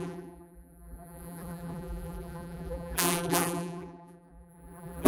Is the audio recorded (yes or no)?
no